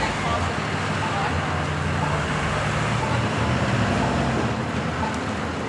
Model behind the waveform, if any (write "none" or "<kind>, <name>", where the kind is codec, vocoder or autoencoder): none